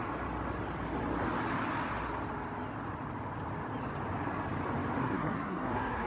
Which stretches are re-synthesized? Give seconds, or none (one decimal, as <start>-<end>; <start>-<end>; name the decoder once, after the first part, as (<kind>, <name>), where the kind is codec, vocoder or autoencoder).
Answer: 5.0-6.1 (codec, SNAC)